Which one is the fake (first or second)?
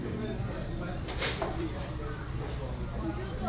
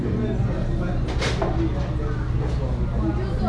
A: first